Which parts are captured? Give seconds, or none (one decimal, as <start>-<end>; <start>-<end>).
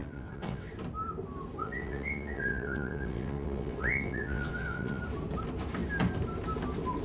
0.7-1.6; 5.0-7.0